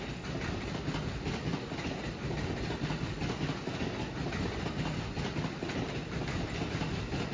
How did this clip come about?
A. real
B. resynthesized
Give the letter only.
A